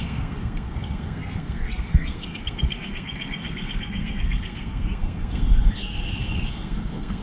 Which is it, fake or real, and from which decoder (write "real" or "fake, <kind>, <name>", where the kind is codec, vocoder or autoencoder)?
fake, codec, SNAC